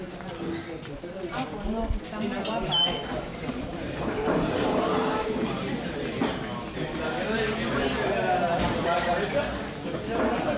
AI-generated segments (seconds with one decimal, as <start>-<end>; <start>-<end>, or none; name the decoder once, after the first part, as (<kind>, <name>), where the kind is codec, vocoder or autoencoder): 3.1-5.6 (vocoder, BigVGAN v2)